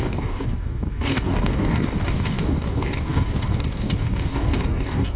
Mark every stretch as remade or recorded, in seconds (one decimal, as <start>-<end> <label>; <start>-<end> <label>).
0.0-5.2 remade